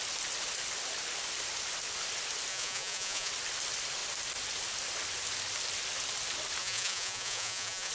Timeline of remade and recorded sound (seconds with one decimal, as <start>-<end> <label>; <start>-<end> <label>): 0.0-2.5 recorded; 2.5-3.3 remade; 3.3-6.6 recorded; 6.6-7.9 remade

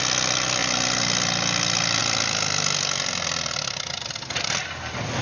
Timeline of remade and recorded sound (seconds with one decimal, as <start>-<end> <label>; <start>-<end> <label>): 0.0-5.2 recorded

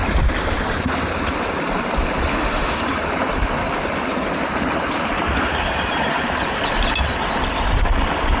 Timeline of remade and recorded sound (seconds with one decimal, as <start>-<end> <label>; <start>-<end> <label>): 0.0-2.3 recorded; 2.3-2.8 remade; 2.8-8.4 recorded